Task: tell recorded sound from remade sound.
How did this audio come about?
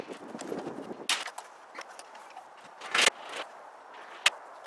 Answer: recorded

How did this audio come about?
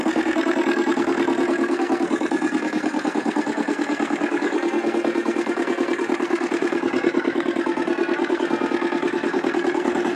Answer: remade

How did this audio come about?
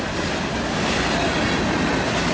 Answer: recorded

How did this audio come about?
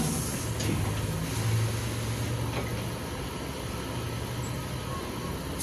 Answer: recorded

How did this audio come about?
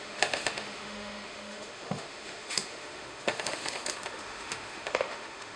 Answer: remade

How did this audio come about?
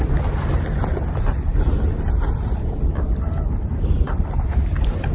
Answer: recorded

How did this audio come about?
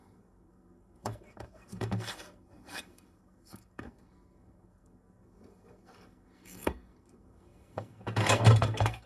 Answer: remade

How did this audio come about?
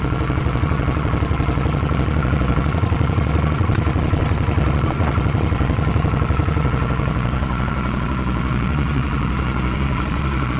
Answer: remade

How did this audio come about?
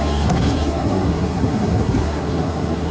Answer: remade